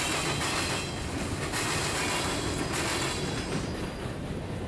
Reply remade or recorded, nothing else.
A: recorded